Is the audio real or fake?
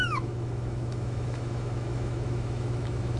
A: fake